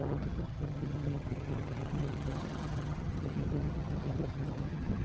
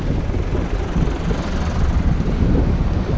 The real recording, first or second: second